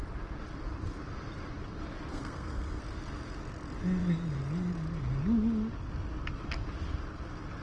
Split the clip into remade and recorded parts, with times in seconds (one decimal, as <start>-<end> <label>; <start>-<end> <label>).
0.0-2.1 recorded; 2.1-2.8 remade; 2.8-7.6 recorded